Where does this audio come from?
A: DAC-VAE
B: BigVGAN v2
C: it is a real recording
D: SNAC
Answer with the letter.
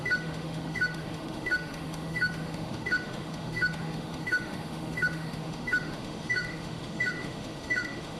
A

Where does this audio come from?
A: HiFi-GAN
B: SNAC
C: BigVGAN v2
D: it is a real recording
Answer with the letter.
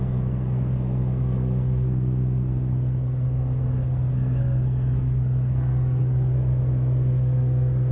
B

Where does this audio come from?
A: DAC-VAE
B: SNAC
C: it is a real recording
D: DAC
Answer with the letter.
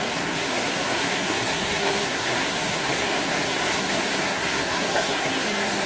B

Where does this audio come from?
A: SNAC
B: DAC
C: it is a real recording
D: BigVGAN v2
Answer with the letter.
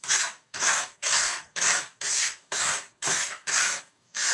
B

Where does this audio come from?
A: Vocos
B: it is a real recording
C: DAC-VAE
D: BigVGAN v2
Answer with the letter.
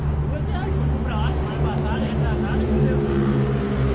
B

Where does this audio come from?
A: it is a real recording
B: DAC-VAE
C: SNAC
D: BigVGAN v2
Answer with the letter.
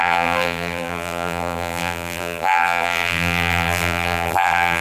D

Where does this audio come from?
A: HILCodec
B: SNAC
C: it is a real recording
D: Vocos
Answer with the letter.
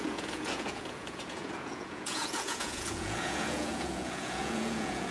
D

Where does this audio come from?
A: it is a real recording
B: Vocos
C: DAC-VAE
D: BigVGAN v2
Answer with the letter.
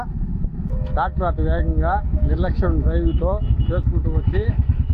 C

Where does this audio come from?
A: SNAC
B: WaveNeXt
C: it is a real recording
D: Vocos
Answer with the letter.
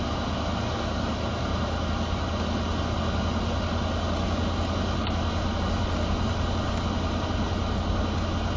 C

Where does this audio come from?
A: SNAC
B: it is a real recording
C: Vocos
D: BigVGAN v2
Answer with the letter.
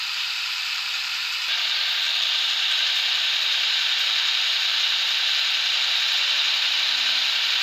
D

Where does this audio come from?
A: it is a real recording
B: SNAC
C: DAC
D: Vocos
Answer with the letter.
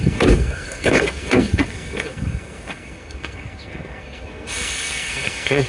B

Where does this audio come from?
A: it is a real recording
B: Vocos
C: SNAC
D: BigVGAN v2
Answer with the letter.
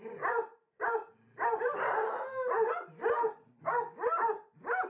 A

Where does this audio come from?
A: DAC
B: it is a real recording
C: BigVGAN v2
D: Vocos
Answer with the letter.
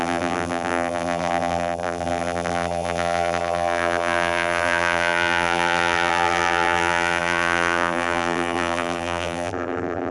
C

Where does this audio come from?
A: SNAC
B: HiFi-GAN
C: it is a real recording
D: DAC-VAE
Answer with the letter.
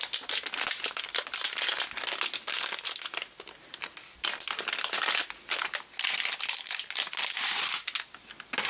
C